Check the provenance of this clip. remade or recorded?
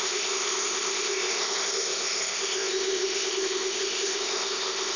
remade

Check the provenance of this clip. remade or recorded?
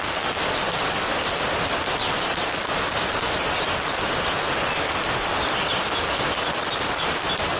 recorded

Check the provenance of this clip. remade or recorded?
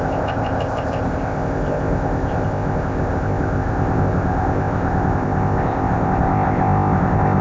remade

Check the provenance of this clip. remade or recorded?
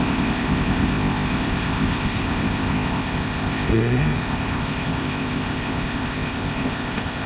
remade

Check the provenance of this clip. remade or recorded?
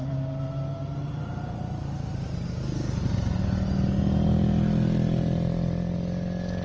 recorded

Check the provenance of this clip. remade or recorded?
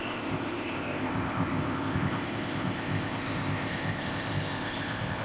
remade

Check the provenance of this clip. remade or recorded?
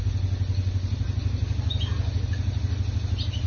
recorded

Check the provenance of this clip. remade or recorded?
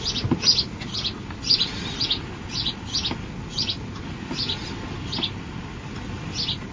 recorded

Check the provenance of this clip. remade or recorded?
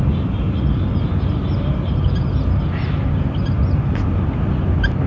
recorded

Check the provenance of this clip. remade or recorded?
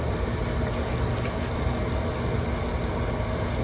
recorded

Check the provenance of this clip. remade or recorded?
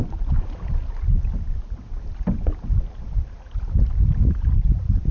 recorded